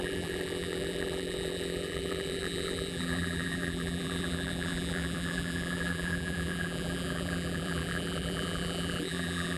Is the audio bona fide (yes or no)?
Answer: no